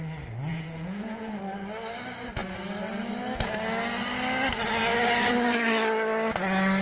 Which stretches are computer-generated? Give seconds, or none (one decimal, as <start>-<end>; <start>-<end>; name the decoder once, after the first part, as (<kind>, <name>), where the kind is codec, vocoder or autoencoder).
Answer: 0.5-1.4 (vocoder, Vocos)

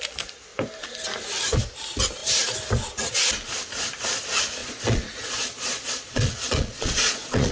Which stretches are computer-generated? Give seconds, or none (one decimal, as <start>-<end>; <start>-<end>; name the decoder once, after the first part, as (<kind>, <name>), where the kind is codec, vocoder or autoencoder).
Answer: 4.6-7.5 (vocoder, Vocos)

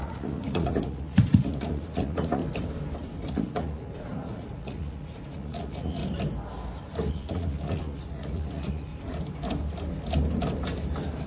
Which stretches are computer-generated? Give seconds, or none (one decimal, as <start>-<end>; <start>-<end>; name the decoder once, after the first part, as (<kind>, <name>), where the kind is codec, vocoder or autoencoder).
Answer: 0.0-2.4 (vocoder, Vocos); 3.3-6.0; 7.1-8.9

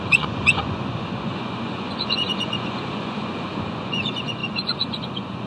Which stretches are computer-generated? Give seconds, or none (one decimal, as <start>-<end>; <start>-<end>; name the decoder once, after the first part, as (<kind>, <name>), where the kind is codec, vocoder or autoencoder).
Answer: 0.0-5.5 (vocoder, Vocos)